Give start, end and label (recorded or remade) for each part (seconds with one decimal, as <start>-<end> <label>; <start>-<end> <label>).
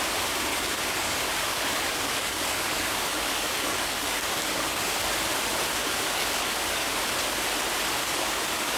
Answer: 0.0-0.5 recorded; 0.5-5.1 remade; 5.1-5.8 recorded; 5.8-7.0 remade; 7.0-8.0 recorded; 8.0-8.8 remade